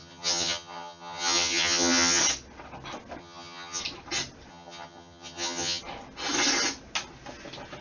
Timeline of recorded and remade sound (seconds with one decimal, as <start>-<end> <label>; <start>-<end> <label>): 0.0-2.2 remade; 2.2-3.2 recorded; 3.2-3.8 remade; 3.8-4.5 recorded; 4.5-5.8 remade; 5.8-7.8 recorded